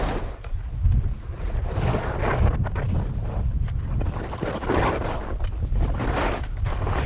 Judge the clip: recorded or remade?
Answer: recorded